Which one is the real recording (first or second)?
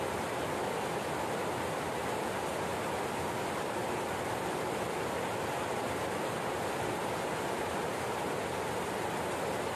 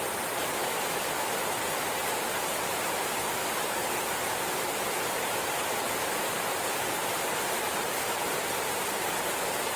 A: first